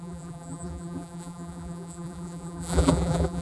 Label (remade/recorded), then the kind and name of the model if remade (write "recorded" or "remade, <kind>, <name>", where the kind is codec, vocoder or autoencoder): remade, vocoder, BigVGAN v2